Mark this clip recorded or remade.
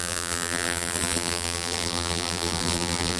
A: remade